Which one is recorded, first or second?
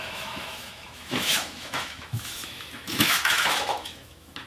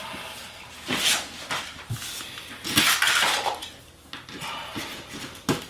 second